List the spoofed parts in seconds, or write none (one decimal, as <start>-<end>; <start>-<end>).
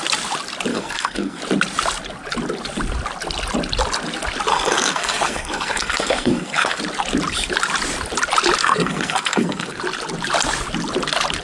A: 0.7-1.4; 4.5-6.8; 8.6-9.8